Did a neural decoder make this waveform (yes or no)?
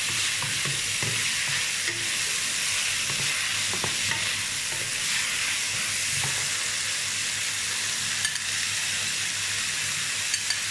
no